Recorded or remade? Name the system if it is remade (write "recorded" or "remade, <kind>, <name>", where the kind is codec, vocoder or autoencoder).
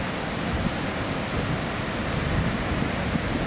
recorded